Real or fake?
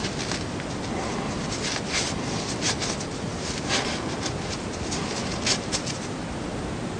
real